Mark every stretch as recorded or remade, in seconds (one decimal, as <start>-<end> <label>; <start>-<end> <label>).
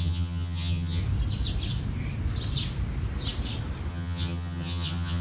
0.0-1.0 remade; 1.0-3.9 recorded; 3.9-5.2 remade